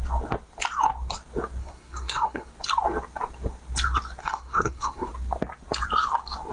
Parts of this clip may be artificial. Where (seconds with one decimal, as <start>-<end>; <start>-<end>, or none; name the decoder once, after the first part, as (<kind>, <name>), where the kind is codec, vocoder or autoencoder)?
1.6-2.5 (codec, SNAC); 4.2-5.1